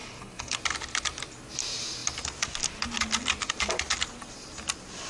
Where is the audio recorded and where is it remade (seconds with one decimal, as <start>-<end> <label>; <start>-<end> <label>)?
0.0-0.6 remade; 0.6-5.1 recorded